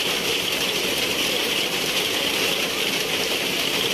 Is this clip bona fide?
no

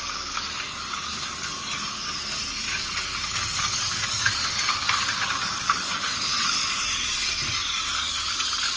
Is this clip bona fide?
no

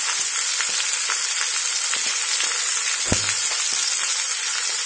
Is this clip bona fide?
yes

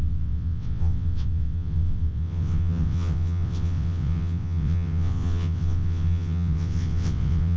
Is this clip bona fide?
no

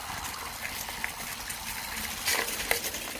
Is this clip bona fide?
yes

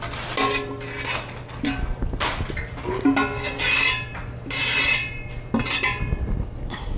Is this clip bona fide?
yes